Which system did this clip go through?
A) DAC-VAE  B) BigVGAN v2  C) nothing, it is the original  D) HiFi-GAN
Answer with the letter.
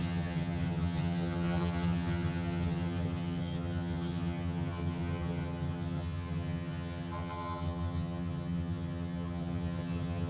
D